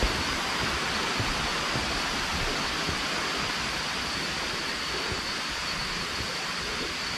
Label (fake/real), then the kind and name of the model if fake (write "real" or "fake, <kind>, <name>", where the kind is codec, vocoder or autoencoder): real